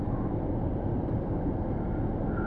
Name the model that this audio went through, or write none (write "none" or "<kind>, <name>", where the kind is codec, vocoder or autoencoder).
none